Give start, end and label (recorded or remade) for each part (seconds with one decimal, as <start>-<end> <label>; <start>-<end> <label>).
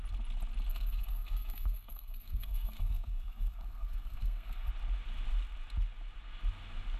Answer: 0.0-0.7 recorded; 0.7-4.7 remade; 4.7-7.0 recorded